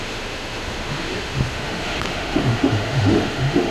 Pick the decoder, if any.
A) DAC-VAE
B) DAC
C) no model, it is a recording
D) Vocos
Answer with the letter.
A